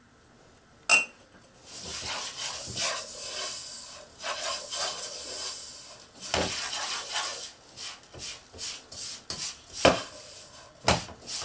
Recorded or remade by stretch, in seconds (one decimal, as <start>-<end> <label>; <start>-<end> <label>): 0.0-11.4 recorded